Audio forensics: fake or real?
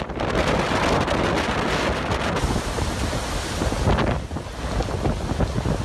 real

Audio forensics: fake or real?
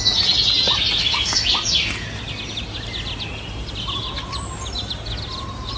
real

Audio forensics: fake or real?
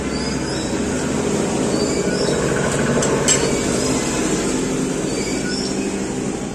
real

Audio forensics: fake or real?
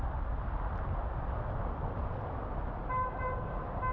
real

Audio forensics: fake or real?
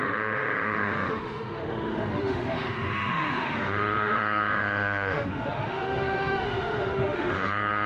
fake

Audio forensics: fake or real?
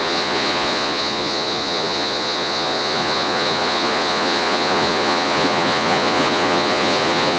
fake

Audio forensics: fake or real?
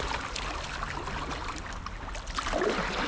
real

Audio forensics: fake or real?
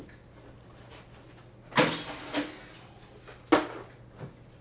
real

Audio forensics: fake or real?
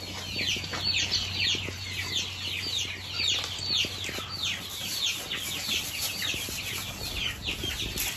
real